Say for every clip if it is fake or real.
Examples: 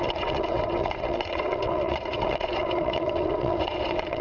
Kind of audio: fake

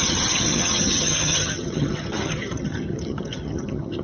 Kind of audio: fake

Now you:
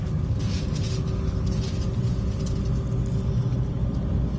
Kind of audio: real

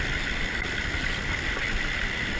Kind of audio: real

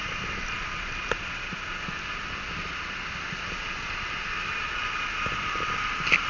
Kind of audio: real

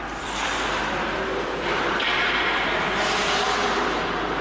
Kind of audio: fake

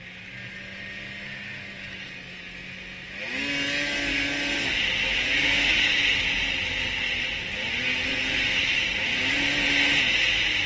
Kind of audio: real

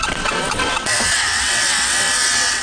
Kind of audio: fake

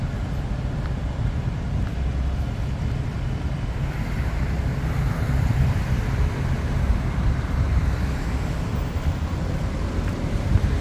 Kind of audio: fake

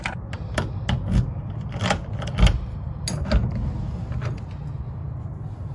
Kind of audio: real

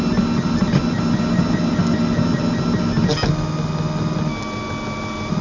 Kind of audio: real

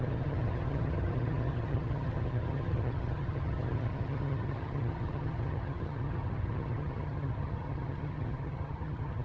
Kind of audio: fake